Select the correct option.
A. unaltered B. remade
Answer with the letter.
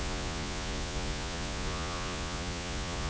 B